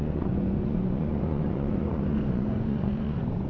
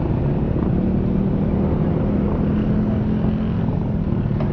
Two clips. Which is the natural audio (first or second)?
second